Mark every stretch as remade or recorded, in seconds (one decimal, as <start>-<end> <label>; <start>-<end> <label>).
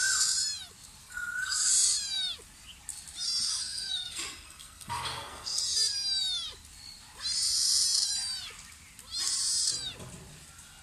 0.0-1.0 recorded; 1.0-1.7 remade; 1.7-3.5 recorded; 3.5-5.6 remade; 5.6-10.8 recorded